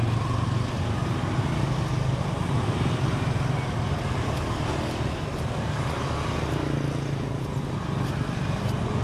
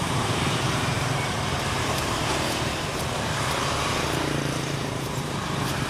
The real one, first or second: first